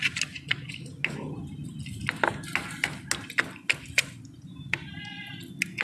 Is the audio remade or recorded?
recorded